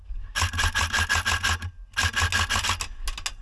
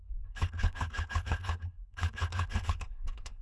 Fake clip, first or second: second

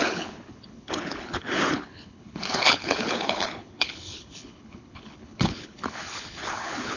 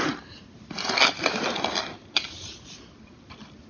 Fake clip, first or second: first